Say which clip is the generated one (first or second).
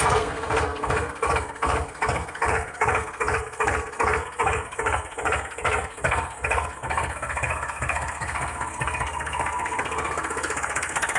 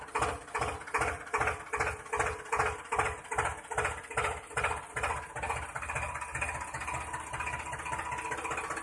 first